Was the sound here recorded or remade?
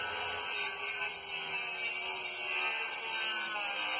recorded